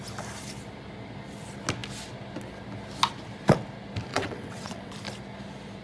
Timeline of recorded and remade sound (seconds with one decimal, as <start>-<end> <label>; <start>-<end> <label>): 0.0-4.1 recorded; 4.1-4.9 remade; 4.9-5.8 recorded